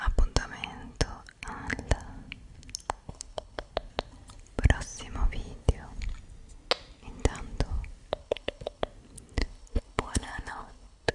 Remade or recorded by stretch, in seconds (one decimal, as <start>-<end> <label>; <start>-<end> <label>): 0.0-3.1 recorded; 3.1-3.7 remade; 3.7-8.2 recorded; 8.2-8.8 remade; 8.8-9.4 recorded; 9.4-11.1 remade